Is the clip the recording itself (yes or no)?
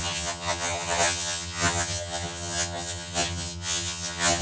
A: no